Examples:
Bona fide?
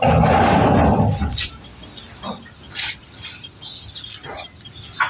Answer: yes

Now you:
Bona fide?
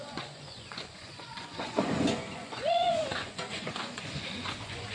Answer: no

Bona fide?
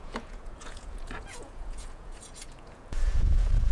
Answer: no